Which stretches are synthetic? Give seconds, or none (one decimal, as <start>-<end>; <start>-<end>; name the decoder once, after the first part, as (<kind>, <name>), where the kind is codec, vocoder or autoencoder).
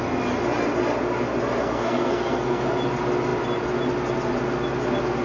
1.6-2.7 (codec, SNAC)